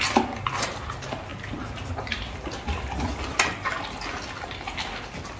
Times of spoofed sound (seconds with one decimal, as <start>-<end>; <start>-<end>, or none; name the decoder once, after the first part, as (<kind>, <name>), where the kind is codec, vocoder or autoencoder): none